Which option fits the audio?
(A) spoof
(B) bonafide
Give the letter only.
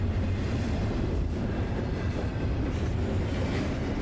A